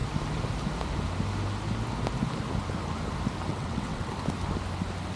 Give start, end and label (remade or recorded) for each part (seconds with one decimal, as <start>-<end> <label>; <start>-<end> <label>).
0.0-3.5 recorded; 3.5-4.1 remade; 4.1-5.2 recorded